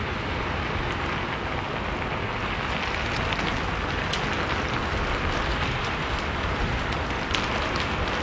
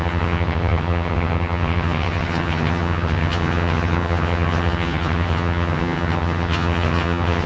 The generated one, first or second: second